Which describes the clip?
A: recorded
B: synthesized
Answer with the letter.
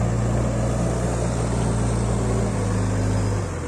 A